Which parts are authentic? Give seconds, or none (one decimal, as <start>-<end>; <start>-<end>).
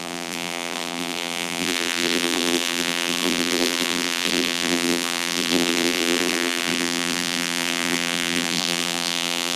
none